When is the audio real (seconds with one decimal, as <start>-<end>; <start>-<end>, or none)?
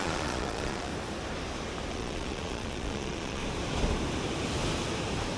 0.9-1.9; 3.4-5.4